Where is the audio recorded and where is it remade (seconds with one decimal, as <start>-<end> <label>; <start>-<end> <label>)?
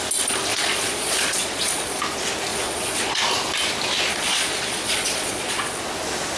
0.0-0.5 recorded; 0.5-2.0 remade; 2.0-2.5 recorded; 2.5-3.2 remade; 3.2-4.1 recorded; 4.1-5.8 remade; 5.8-6.4 recorded